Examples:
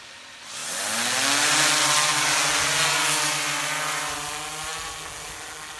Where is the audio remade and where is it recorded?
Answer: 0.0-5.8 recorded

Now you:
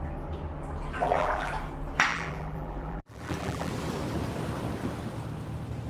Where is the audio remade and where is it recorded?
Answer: 0.0-1.0 recorded; 1.0-1.5 remade; 1.5-2.1 recorded; 2.1-3.7 remade; 3.7-5.9 recorded

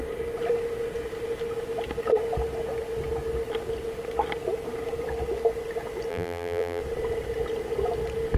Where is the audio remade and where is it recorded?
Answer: 0.0-6.1 recorded; 6.1-6.8 remade; 6.8-8.4 recorded

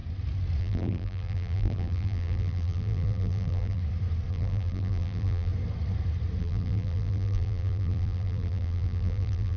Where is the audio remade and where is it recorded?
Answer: 0.0-0.6 recorded; 0.6-3.8 remade; 3.8-4.3 recorded; 4.3-5.5 remade; 5.5-6.4 recorded; 6.4-9.6 remade

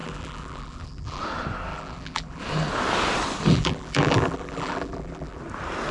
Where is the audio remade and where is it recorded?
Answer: 0.0-1.2 remade; 1.2-1.7 recorded; 1.7-2.4 remade; 2.4-3.5 recorded; 3.5-5.4 remade; 5.4-5.9 recorded

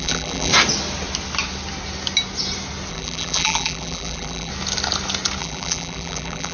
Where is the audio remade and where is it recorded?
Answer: 0.0-0.5 remade; 0.5-2.9 recorded; 2.9-4.5 remade; 4.5-5.4 recorded; 5.4-6.5 remade